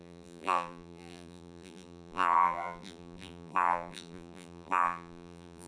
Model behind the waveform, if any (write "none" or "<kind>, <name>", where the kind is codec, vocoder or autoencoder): vocoder, BigVGAN v2